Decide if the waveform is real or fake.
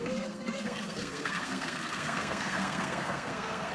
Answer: fake